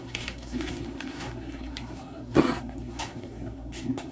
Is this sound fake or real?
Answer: fake